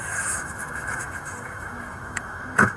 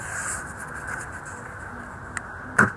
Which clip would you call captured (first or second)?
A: second